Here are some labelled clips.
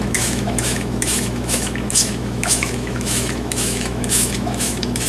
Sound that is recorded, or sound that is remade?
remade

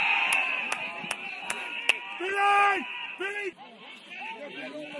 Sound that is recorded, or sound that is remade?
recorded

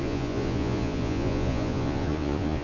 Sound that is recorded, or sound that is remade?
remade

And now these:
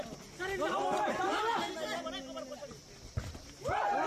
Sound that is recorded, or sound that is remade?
recorded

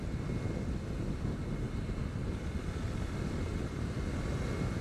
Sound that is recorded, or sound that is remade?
recorded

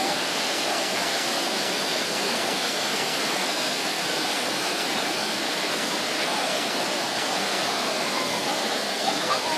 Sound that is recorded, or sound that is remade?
remade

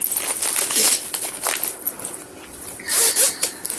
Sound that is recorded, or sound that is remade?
recorded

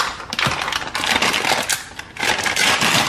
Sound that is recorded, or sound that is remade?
recorded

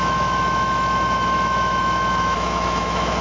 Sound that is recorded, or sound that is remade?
remade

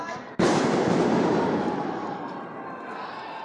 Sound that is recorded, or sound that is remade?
recorded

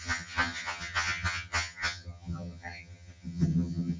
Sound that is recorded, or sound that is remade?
remade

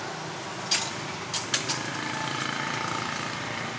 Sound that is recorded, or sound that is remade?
recorded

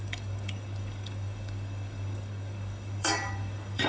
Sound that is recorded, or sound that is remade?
remade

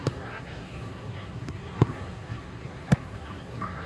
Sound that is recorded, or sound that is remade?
remade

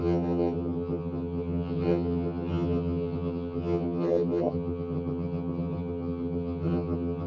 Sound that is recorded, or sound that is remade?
remade